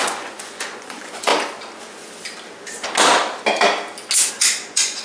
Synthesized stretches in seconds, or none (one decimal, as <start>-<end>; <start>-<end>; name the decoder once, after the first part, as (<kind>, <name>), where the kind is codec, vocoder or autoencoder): 0.0-1.3 (vocoder, Vocos); 4.3-5.0